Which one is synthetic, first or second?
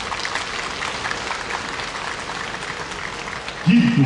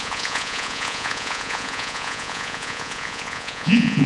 second